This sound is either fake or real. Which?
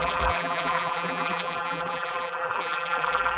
fake